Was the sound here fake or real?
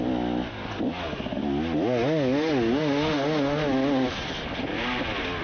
real